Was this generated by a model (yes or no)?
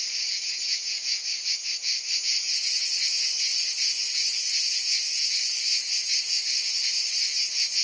yes